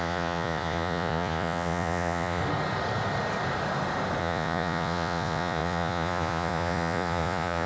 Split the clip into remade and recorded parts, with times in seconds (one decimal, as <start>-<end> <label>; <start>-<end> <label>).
0.0-2.4 remade; 2.4-4.2 recorded; 4.2-7.7 remade